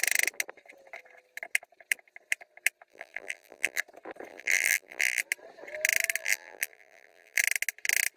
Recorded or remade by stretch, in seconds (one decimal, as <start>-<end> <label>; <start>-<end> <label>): 0.0-2.9 recorded; 2.9-3.8 remade; 3.8-4.3 recorded; 4.3-5.2 remade; 5.2-6.2 recorded; 6.2-7.4 remade; 7.4-8.2 recorded